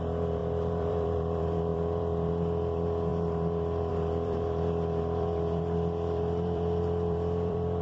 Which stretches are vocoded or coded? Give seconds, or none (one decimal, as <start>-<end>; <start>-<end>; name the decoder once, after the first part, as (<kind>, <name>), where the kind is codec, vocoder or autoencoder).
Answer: 0.0-7.8 (vocoder, BigVGAN v2)